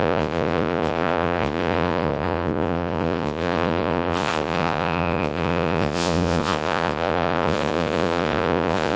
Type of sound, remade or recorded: remade